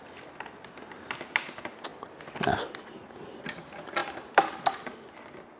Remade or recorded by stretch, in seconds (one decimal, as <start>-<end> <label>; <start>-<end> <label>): 0.0-5.6 recorded